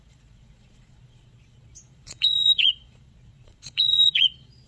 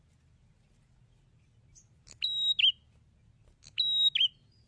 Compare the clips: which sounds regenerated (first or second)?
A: first